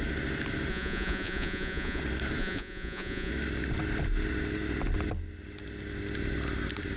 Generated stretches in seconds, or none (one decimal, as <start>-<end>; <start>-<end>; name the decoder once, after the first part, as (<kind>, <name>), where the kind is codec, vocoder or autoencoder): 0.7-2.0 (vocoder, Vocos); 2.4-3.3